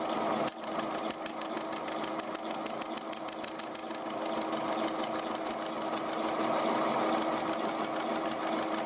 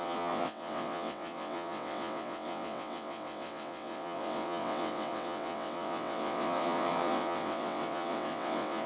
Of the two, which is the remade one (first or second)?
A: second